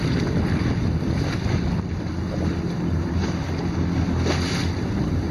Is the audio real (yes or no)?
yes